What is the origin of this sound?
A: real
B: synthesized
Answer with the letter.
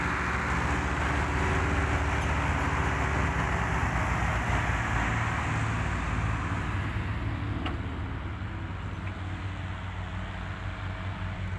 A